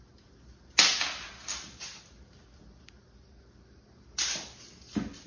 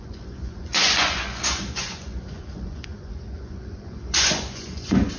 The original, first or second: first